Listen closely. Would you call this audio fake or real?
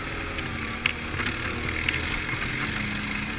real